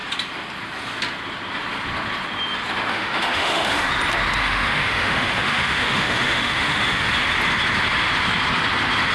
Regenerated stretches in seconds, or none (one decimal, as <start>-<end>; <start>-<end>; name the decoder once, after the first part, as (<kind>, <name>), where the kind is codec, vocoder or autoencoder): 2.9-3.9 (autoencoder, DAC-VAE); 4.4-7.1